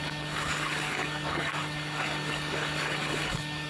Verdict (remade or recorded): remade